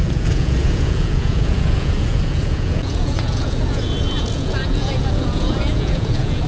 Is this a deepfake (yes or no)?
yes